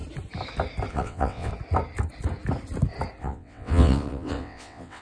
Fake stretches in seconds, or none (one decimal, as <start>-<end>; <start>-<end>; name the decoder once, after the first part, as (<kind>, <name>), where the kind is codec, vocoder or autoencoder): 0.9-1.5 (vocoder, WaveNeXt); 3.2-5.0